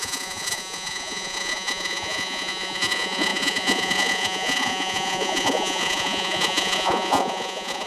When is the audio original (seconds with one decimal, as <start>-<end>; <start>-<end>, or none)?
none